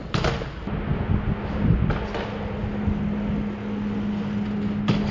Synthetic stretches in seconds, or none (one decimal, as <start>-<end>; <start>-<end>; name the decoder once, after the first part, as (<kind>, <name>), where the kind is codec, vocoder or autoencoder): none

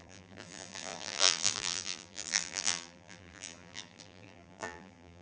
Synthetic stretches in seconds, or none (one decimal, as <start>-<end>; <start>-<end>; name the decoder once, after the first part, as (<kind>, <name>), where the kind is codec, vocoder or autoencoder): 0.0-5.2 (vocoder, BigVGAN v2)

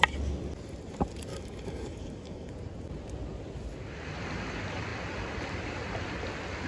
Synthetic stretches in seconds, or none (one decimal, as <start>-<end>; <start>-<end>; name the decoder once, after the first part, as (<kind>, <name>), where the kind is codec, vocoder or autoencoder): 1.3-2.5 (codec, DAC)

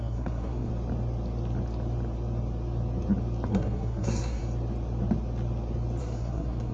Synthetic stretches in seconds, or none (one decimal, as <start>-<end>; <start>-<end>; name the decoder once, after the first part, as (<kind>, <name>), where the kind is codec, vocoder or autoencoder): 0.0-0.7 (codec, SNAC); 3.5-4.4; 6.0-6.7

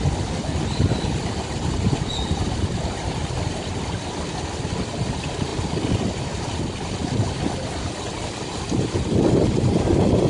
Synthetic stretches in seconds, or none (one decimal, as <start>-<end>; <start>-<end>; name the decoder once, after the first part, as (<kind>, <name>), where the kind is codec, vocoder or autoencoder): none

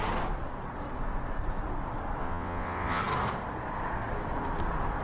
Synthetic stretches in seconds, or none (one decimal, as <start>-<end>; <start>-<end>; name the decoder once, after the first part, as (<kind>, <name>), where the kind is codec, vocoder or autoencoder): 2.2-3.0 (vocoder, WaveNeXt)

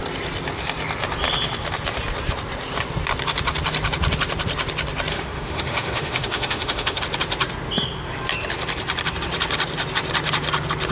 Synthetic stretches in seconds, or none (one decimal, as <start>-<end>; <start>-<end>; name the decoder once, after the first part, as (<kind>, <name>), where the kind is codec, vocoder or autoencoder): 5.1-7.0 (autoencoder, DAC-VAE)